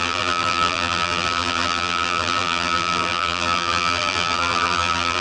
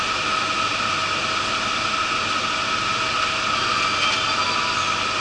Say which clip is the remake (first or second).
first